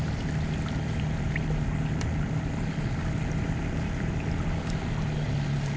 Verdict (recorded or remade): recorded